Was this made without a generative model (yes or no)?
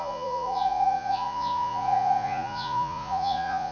no